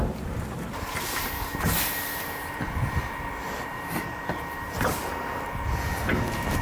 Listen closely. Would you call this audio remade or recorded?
remade